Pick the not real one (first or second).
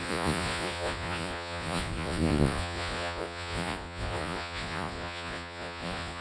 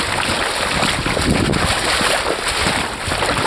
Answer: first